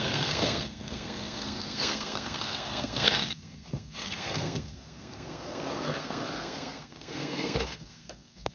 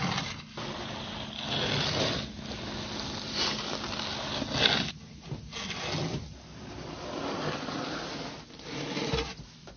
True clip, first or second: second